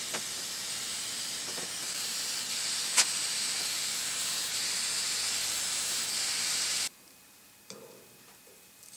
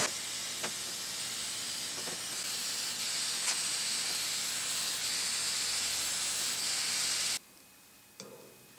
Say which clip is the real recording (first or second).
second